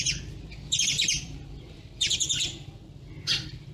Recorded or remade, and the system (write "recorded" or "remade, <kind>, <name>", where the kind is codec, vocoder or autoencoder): remade, vocoder, BigVGAN v2